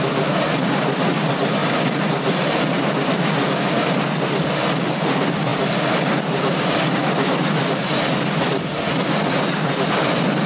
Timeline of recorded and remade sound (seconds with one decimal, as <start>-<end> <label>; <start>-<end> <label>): 0.0-10.5 recorded